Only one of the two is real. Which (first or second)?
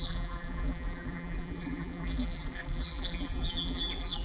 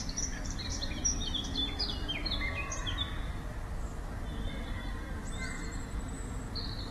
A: second